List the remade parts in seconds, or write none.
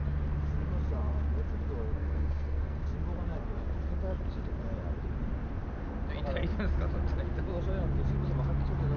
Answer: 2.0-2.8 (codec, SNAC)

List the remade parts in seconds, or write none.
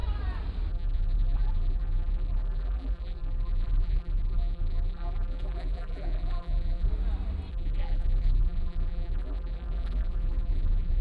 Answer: 0.7-6.9 (vocoder, BigVGAN v2); 7.5-11.0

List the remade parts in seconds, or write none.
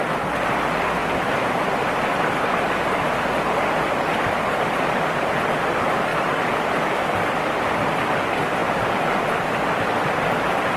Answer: 1.0-3.4 (vocoder, BigVGAN v2); 6.1-7.7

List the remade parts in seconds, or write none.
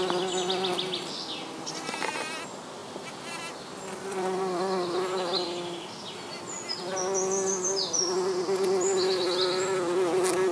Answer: none